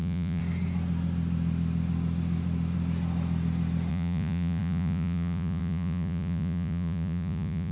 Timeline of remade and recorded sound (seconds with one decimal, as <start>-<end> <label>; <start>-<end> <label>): 0.0-0.4 remade; 0.4-3.9 recorded; 3.9-7.7 remade